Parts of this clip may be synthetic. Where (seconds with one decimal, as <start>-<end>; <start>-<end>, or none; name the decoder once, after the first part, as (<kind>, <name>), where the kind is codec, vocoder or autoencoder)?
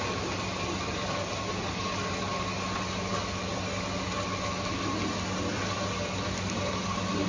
none